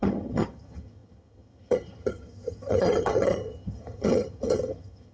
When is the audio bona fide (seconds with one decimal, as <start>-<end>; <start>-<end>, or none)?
none